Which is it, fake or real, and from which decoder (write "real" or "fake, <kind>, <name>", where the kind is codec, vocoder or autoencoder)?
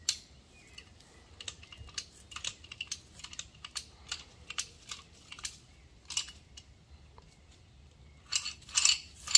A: real